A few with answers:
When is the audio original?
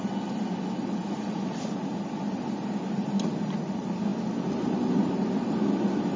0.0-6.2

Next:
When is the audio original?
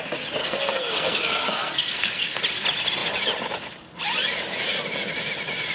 0.0-0.4; 2.4-5.7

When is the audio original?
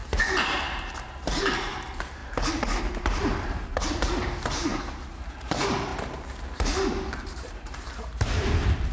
2.2-2.8; 5.9-7.1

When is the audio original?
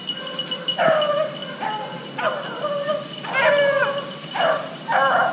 0.0-5.3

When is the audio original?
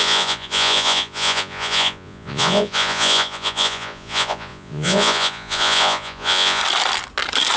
6.6-7.6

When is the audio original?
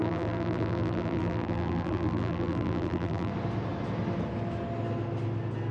3.3-5.7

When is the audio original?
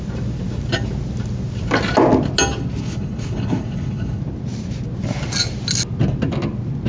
0.0-2.8; 4.2-6.9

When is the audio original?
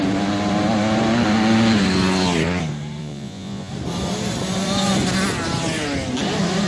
0.0-3.0; 3.7-6.7